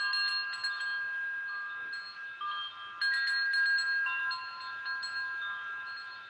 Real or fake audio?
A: real